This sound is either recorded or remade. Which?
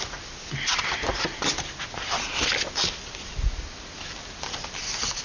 recorded